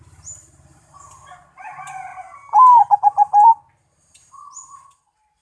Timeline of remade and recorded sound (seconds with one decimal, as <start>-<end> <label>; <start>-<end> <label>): 0.0-5.4 recorded